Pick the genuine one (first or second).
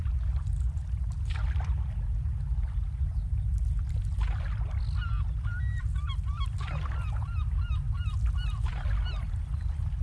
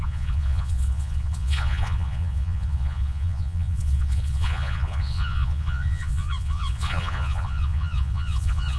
first